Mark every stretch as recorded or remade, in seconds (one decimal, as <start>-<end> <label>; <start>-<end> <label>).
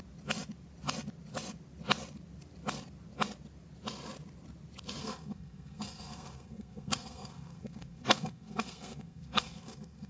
0.0-5.0 recorded; 5.0-10.1 remade